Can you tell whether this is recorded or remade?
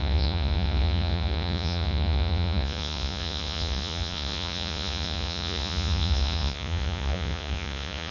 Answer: remade